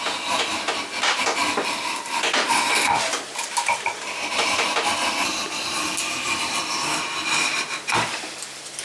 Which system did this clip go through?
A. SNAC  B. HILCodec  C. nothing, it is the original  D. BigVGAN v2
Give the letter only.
D